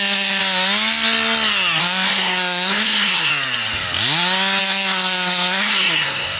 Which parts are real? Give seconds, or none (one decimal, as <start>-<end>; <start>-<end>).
0.4-1.8; 3.3-4.6

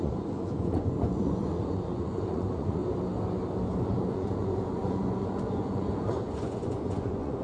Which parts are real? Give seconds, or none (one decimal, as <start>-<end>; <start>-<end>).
2.8-3.8